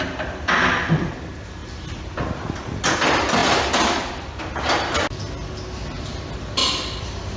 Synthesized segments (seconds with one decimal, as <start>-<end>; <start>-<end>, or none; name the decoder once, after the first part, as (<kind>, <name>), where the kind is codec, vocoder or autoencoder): none